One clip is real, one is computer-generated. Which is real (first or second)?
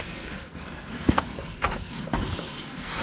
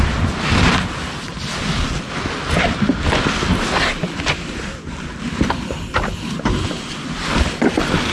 second